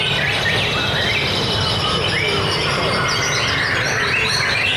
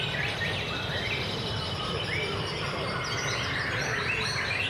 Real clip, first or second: first